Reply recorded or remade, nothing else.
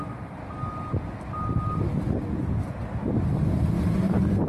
recorded